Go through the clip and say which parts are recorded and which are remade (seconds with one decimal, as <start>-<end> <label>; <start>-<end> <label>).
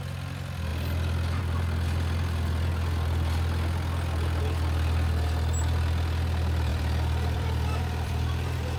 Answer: 0.0-6.7 recorded; 6.7-8.8 remade